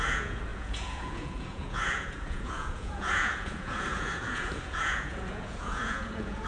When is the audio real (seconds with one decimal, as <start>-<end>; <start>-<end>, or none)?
none